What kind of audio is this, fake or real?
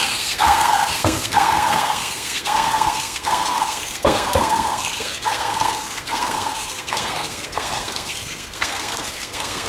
fake